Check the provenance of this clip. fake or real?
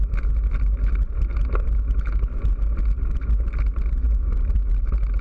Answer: real